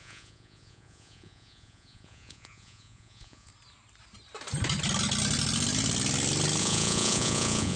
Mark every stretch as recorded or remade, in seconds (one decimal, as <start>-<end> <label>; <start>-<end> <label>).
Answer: 0.0-3.5 remade; 3.5-6.6 recorded; 6.6-7.8 remade